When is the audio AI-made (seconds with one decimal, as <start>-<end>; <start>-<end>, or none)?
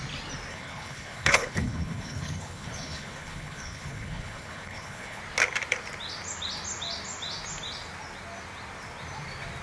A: 0.5-5.2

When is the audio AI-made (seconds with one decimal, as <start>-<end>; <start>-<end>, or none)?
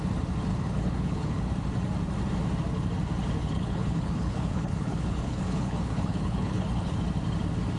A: 0.5-1.5; 3.4-7.0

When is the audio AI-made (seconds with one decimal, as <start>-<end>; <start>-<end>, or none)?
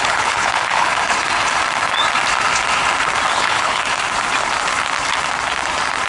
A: 0.0-0.9; 3.3-3.8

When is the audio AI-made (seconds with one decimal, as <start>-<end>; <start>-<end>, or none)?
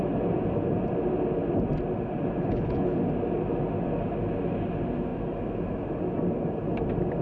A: 2.4-3.0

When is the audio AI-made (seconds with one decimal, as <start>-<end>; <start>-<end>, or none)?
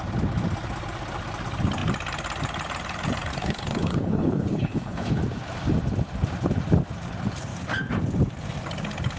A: 3.3-5.2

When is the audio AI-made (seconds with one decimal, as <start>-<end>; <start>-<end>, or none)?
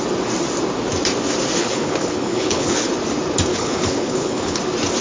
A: 1.6-2.9; 3.5-4.6